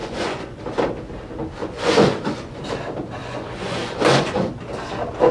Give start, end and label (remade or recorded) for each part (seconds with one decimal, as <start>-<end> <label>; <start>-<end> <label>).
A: 0.0-0.6 remade; 0.6-1.6 recorded; 1.6-2.6 remade; 2.6-3.2 recorded; 3.2-4.5 remade; 4.5-5.3 recorded